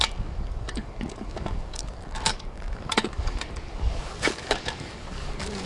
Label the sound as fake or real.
fake